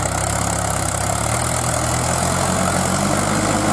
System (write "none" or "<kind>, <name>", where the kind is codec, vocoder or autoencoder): none